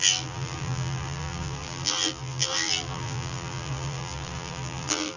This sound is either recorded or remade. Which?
remade